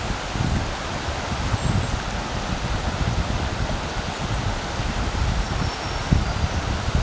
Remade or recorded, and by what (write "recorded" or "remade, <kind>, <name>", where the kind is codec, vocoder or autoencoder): recorded